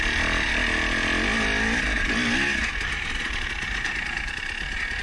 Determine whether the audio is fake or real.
real